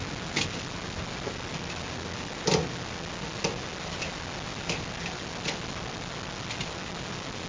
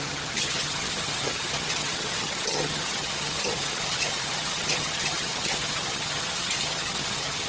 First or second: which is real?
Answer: first